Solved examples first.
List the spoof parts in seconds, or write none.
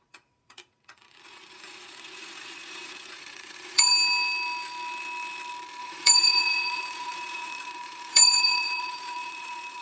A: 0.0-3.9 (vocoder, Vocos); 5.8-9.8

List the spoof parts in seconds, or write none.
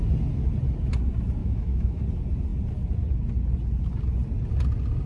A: 1.4-2.0 (autoencoder, DAC-VAE)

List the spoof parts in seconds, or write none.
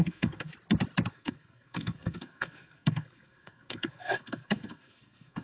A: 0.0-0.5 (codec, SNAC); 1.1-5.4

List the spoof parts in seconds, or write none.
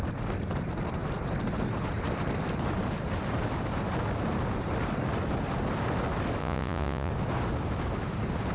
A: 6.4-7.1 (vocoder, Vocos)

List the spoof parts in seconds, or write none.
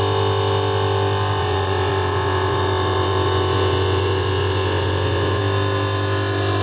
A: 1.4-5.4 (vocoder, Vocos)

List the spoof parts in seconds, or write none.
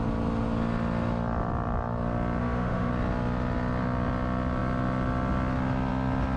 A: 2.4-2.9 (autoencoder, DAC-VAE)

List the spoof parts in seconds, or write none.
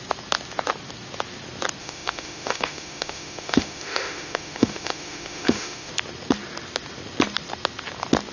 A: 1.8-5.9 (autoencoder, DAC-VAE)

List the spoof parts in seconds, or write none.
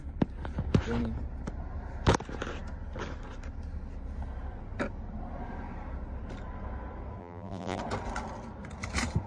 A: 7.2-7.8 (vocoder, BigVGAN v2)